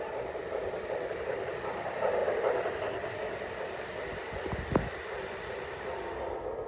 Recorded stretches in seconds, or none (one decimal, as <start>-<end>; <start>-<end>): 0.0-6.7